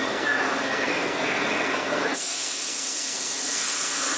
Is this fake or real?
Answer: fake